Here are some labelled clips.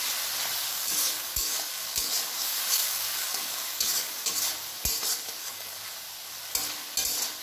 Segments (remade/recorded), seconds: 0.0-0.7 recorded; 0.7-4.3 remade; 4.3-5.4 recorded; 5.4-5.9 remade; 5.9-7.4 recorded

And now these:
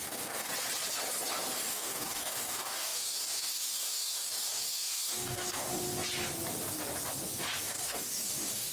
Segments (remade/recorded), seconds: 0.0-0.5 remade; 0.5-1.7 recorded; 1.7-5.7 remade; 5.7-7.6 recorded; 7.6-8.7 remade

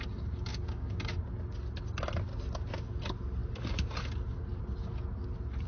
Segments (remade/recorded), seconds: 0.0-0.5 recorded; 0.5-1.2 remade; 1.2-5.7 recorded

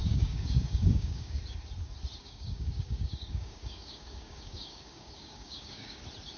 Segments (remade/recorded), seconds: 0.0-1.4 remade; 1.4-2.2 recorded; 2.2-6.0 remade; 6.0-6.4 recorded

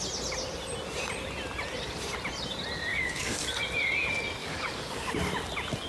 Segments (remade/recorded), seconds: 0.0-2.9 recorded; 2.9-3.6 remade; 3.6-4.4 recorded; 4.4-5.1 remade; 5.1-5.9 recorded

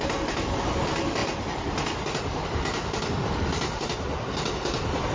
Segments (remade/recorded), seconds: 0.0-5.1 recorded